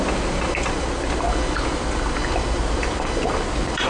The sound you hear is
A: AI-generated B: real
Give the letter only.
B